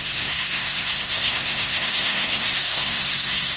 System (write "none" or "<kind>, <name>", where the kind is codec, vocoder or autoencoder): codec, SNAC